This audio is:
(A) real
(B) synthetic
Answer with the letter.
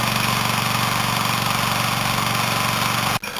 A